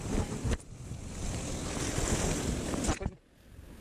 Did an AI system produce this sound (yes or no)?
no